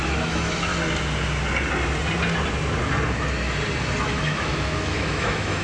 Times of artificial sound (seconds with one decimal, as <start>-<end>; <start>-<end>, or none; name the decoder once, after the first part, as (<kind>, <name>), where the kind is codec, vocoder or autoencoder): 0.0-0.7 (autoencoder, DAC-VAE); 4.0-5.6